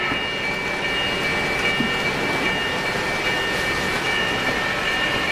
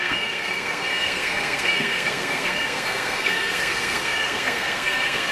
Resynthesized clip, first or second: second